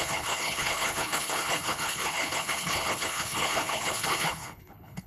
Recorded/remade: remade